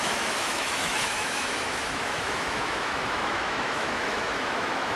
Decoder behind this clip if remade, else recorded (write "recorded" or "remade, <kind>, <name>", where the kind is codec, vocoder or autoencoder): remade, autoencoder, DAC-VAE